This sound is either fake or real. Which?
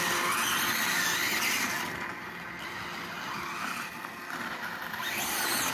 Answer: real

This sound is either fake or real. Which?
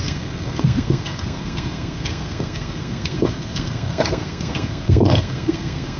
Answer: fake